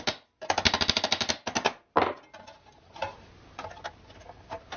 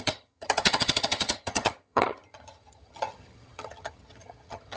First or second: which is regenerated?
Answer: second